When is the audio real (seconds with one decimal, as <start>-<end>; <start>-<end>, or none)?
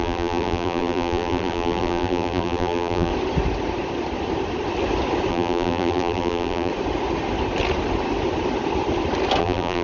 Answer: 3.1-5.3; 6.7-9.4